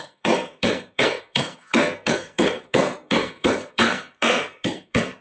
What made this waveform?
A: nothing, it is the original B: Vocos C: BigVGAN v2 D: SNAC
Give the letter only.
D